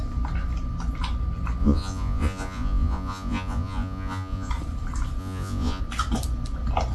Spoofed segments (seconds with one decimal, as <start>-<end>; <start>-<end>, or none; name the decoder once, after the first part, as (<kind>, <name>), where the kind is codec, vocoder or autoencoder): 1.6-4.5 (vocoder, Vocos); 5.2-5.8